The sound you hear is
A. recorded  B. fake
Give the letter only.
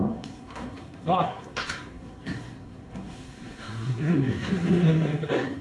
B